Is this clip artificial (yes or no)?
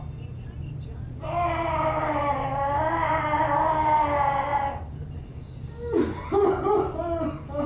no